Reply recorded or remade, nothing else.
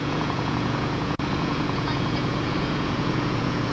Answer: remade